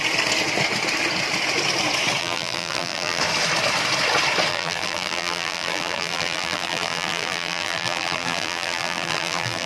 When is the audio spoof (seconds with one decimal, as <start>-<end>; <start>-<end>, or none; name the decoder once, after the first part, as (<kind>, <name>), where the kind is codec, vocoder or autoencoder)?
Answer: 2.2-3.2 (vocoder, BigVGAN v2); 4.5-9.7